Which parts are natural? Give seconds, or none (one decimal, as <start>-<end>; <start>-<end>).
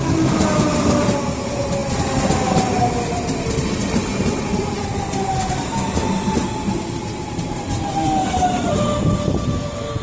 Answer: 0.0-10.0